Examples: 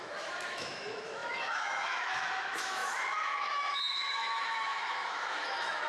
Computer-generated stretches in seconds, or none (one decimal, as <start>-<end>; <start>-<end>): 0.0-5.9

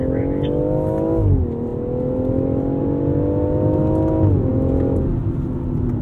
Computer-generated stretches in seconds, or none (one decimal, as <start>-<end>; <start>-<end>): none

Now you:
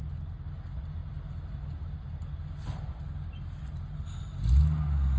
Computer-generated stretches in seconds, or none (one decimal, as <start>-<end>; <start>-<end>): none